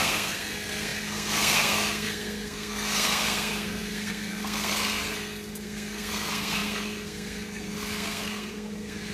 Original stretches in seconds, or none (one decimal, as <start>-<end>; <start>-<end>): none